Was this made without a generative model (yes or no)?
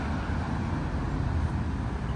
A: yes